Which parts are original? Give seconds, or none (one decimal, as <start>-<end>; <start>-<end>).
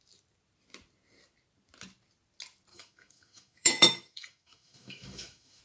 0.0-2.7